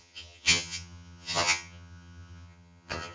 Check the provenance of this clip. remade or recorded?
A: remade